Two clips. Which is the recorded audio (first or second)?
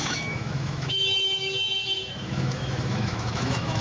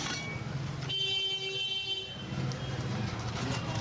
second